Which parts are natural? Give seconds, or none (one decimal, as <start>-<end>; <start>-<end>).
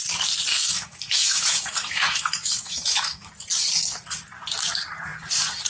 0.0-0.5; 3.3-5.7